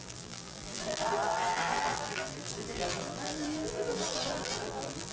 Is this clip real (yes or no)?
no